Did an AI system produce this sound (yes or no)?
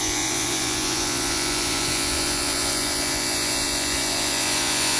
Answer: yes